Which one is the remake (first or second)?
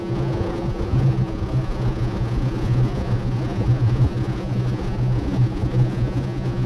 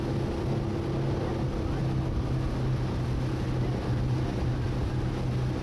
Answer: first